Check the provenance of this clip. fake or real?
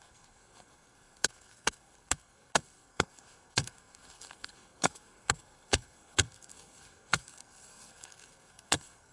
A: fake